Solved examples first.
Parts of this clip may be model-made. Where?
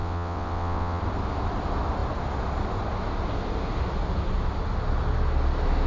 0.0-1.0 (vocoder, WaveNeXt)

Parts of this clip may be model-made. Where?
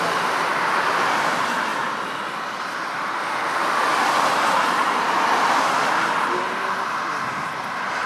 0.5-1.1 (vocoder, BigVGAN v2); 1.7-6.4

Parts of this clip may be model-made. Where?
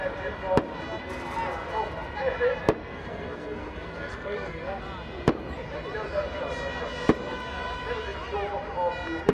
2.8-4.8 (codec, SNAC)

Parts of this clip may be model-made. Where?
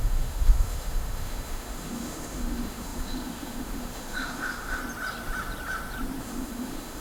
0.0-4.8 (autoencoder, DAC-VAE); 6.2-7.0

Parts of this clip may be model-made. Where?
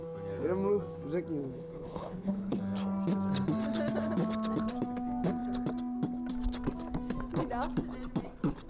1.4-2.6 (codec, HILCodec)